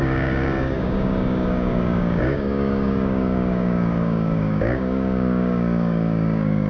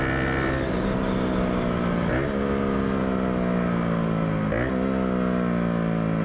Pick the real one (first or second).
second